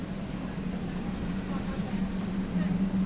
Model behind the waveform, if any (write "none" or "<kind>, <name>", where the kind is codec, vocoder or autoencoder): none